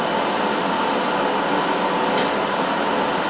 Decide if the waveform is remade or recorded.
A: recorded